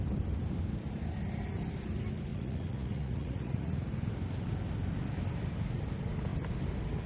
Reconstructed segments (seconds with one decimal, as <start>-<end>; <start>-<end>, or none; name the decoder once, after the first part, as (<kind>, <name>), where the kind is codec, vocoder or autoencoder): 2.3-3.9 (vocoder, Vocos)